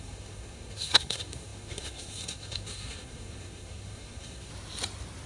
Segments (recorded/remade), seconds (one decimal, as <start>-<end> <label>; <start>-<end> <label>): 0.0-4.5 remade; 4.5-5.3 recorded